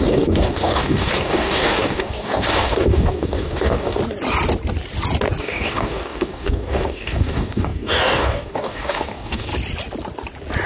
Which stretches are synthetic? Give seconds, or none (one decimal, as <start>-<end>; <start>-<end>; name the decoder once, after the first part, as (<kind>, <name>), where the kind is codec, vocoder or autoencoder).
0.0-4.0 (codec, DAC); 5.4-9.5